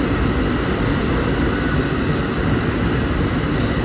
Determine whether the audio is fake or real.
real